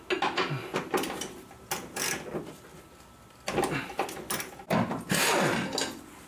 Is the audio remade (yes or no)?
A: no